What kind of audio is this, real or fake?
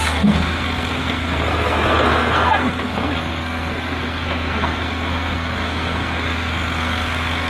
fake